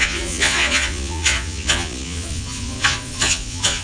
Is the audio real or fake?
fake